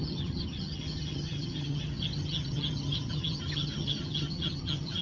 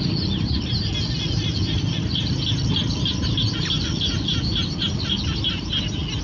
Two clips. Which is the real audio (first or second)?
second